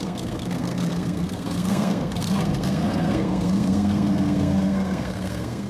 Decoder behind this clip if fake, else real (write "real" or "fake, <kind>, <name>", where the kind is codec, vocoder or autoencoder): fake, codec, SNAC